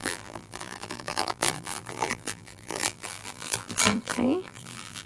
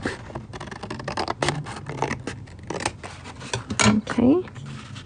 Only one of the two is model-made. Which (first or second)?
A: first